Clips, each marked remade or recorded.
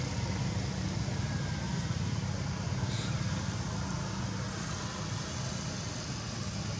recorded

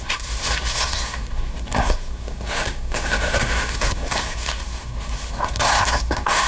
remade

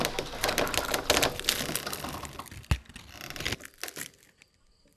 recorded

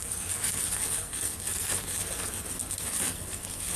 remade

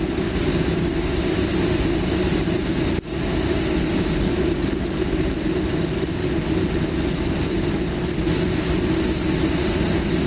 recorded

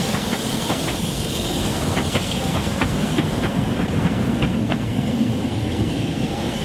remade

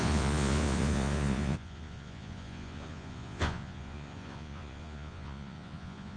remade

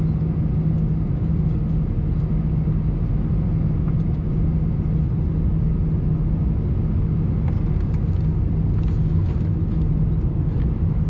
recorded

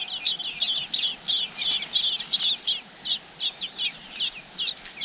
recorded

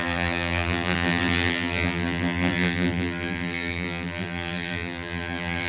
remade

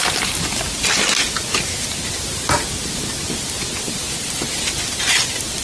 recorded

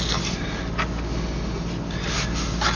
recorded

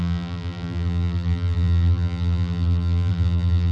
remade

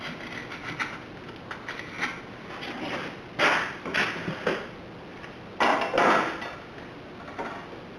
recorded